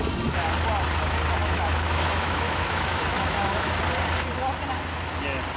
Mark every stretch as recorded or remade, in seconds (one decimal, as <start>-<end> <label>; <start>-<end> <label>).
0.0-1.4 recorded; 1.4-3.8 remade; 3.8-5.6 recorded